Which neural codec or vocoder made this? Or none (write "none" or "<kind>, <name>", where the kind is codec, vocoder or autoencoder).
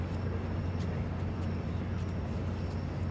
none